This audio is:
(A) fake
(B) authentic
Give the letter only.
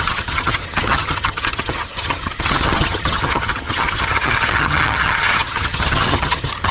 A